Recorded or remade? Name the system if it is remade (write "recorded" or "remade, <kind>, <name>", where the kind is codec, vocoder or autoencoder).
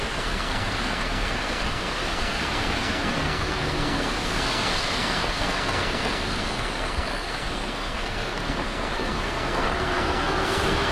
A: remade, codec, SNAC